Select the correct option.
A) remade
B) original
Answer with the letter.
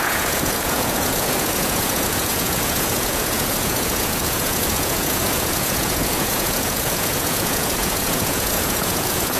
A